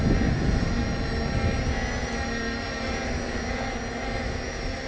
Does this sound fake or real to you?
real